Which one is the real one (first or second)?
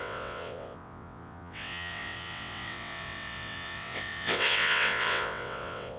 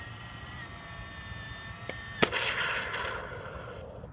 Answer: second